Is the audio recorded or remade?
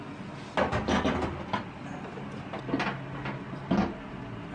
recorded